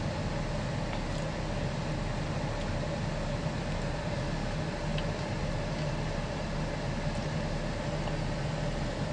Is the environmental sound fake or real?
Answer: real